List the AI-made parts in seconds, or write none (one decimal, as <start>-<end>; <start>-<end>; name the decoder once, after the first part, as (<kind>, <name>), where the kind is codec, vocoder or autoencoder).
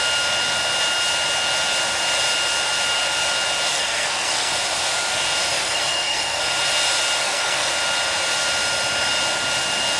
3.7-4.5 (codec, SNAC); 5.5-6.4; 7.2-7.7